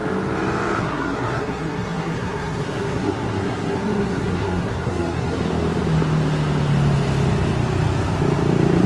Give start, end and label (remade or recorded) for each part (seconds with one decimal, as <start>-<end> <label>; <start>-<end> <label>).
0.0-0.8 recorded; 0.8-5.4 remade; 5.4-8.9 recorded